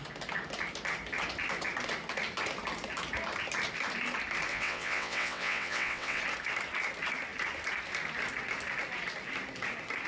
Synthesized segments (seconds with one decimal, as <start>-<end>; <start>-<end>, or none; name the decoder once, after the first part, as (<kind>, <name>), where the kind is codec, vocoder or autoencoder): 4.5-6.2 (vocoder, WaveNeXt)